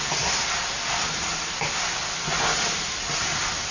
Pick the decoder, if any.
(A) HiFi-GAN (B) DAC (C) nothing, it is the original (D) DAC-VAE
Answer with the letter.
C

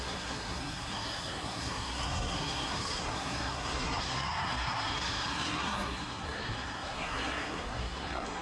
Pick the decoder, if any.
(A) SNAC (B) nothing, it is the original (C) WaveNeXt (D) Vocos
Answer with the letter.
A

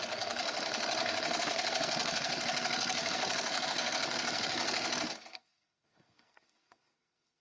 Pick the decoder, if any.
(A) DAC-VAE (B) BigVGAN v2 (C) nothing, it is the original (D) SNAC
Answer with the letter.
D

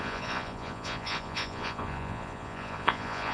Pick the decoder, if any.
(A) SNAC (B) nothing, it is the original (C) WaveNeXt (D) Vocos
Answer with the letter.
D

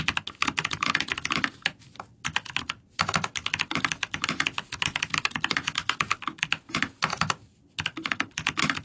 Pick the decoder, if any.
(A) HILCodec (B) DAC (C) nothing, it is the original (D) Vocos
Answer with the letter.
C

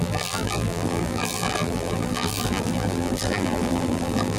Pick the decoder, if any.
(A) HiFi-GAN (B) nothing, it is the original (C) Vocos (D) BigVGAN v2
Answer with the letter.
D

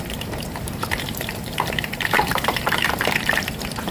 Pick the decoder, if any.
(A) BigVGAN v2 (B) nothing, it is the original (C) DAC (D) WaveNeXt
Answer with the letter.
A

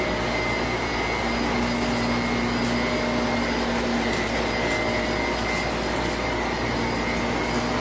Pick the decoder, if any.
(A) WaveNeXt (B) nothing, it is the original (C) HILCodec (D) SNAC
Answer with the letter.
B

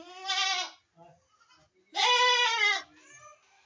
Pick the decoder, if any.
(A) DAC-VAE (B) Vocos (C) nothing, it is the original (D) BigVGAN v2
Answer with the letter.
C